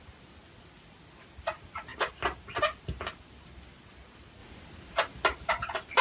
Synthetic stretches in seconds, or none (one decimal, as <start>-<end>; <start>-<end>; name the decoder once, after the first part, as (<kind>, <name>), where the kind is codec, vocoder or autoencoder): none

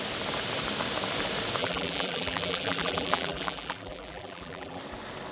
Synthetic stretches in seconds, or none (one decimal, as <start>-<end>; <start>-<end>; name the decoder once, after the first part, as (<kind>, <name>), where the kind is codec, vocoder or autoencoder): 1.6-4.8 (vocoder, BigVGAN v2)

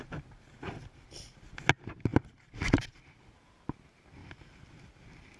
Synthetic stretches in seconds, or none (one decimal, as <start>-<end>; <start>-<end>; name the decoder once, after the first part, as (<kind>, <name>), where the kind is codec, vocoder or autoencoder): 2.1-3.4 (vocoder, BigVGAN v2); 4.2-4.7

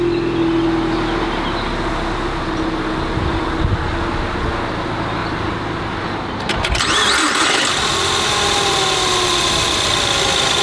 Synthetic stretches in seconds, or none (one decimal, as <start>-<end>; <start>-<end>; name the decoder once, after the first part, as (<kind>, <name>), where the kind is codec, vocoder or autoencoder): 5.2-6.0 (vocoder, BigVGAN v2)

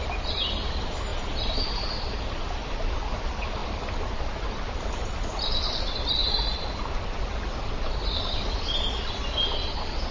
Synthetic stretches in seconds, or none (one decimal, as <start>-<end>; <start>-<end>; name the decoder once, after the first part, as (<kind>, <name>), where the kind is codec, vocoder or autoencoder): 0.0-6.2 (vocoder, BigVGAN v2)